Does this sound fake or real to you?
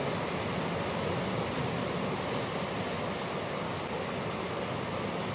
real